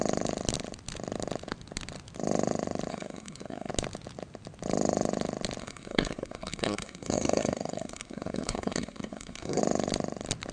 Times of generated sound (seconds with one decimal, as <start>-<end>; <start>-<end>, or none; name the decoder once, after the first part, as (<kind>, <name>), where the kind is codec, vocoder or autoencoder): 2.9-3.7 (codec, SNAC); 5.6-9.6

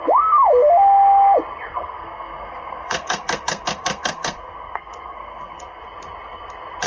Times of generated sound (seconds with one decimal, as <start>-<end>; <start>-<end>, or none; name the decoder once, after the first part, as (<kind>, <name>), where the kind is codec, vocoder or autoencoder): 1.7-5.8 (codec, SNAC)

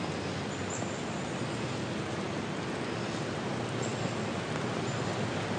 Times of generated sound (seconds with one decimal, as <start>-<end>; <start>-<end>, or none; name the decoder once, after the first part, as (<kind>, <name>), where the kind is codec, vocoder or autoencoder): none